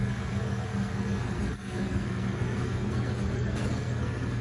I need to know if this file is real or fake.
fake